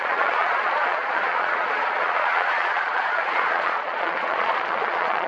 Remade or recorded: remade